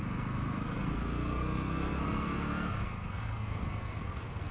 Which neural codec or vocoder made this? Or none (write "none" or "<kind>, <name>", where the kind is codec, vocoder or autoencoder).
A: codec, SNAC